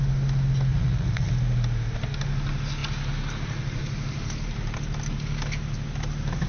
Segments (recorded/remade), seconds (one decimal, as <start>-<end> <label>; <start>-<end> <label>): 0.0-0.7 recorded; 0.7-1.3 remade; 1.3-6.5 recorded